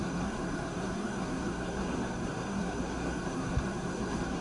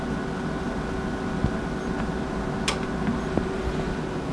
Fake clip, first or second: first